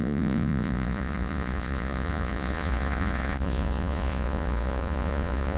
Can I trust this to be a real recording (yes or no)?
no